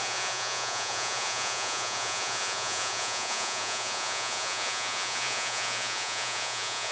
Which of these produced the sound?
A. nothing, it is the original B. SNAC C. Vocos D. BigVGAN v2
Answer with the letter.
C